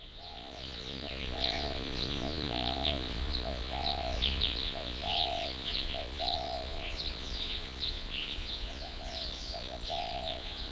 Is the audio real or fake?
fake